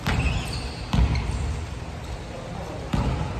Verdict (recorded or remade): recorded